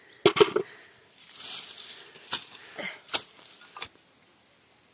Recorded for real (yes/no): yes